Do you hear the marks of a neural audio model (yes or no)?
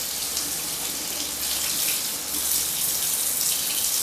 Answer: no